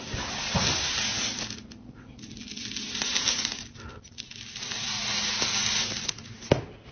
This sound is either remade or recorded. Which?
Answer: recorded